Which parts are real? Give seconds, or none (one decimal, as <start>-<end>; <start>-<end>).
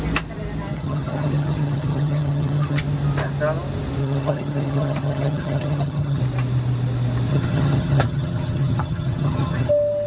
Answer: 0.0-0.7; 2.8-4.0; 6.2-7.3; 9.7-10.1